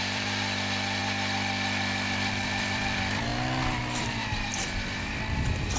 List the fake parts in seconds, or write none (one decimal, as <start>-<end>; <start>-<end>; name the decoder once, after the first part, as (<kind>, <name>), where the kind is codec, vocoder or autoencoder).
0.0-1.0 (vocoder, BigVGAN v2); 2.3-3.3; 3.8-5.8